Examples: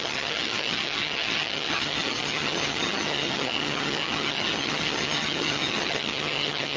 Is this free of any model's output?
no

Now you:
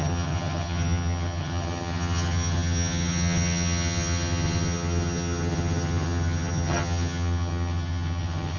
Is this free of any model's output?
no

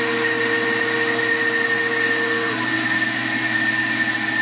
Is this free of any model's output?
yes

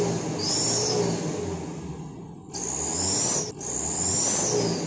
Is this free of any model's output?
yes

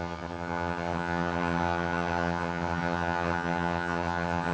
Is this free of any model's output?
no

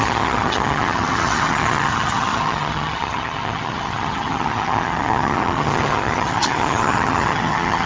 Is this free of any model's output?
no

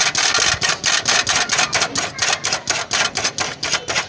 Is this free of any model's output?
yes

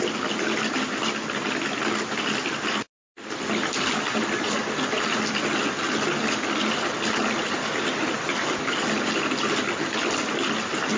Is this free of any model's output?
yes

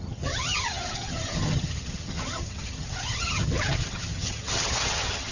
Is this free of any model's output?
no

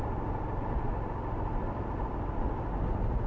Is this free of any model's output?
yes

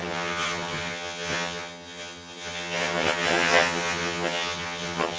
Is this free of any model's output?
no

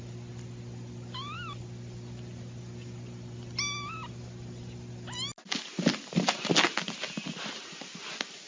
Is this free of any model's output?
yes